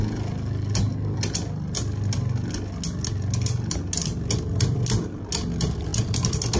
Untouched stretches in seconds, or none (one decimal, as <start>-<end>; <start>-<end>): 0.0-6.6